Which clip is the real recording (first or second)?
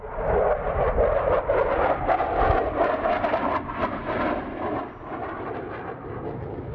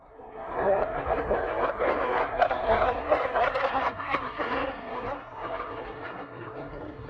first